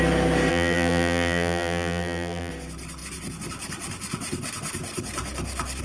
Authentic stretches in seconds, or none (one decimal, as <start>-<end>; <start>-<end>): 0.0-0.5; 2.5-5.8